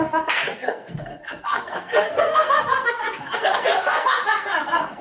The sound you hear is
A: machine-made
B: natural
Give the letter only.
A